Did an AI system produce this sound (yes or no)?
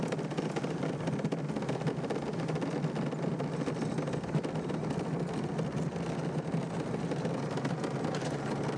no